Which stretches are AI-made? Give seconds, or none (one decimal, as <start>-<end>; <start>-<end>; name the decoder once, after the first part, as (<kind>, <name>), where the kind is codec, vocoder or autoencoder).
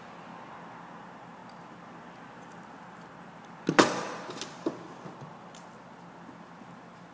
none